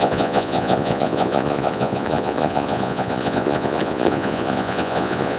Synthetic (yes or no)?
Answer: yes